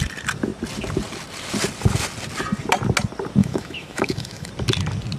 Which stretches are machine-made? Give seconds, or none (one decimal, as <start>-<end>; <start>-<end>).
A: 3.4-4.5